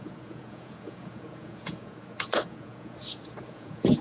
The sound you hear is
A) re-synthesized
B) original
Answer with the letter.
A